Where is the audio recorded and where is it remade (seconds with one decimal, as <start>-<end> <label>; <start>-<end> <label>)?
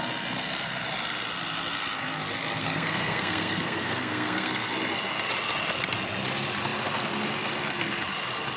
0.0-2.6 recorded; 2.6-4.7 remade; 4.7-8.6 recorded